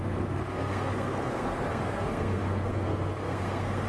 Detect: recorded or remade remade